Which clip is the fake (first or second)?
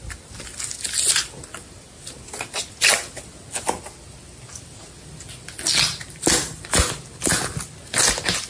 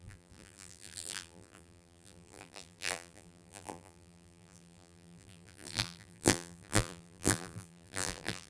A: second